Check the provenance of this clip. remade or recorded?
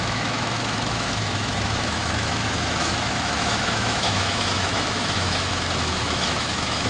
remade